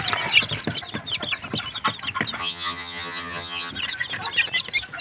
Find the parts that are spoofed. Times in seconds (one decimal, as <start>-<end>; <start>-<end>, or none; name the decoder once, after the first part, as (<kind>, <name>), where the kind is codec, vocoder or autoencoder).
2.4-3.7 (vocoder, HiFi-GAN)